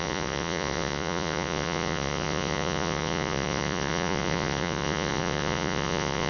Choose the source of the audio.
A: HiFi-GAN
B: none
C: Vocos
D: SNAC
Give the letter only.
C